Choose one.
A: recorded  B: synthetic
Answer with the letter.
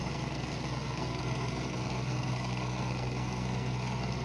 B